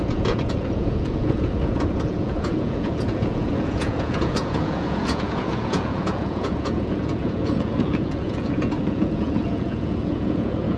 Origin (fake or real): fake